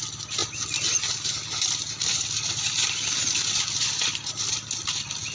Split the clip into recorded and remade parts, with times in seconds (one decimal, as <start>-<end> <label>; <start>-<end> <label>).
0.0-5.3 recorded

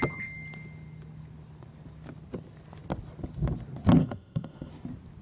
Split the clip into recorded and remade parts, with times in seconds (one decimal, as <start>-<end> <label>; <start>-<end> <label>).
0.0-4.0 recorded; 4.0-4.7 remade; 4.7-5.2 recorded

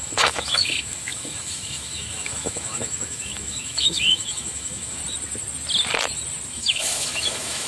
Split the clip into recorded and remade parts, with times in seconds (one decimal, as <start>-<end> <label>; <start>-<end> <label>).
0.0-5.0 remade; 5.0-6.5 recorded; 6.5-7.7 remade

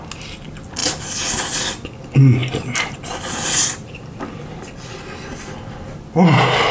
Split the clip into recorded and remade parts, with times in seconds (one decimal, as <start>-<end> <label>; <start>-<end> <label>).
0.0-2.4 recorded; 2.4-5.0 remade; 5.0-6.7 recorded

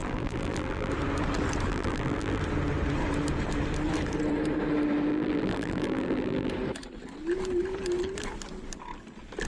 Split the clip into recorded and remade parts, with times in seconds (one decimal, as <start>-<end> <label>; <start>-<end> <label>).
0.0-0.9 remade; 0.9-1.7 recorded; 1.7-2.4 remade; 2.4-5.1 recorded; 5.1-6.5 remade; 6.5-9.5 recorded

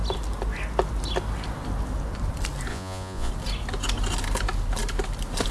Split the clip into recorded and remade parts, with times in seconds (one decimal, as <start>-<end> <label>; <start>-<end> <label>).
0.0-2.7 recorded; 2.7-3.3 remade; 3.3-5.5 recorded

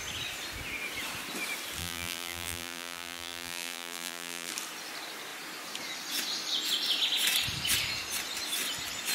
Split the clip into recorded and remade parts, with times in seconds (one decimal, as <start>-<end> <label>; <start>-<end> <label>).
0.0-1.8 recorded; 1.8-4.5 remade; 4.5-9.1 recorded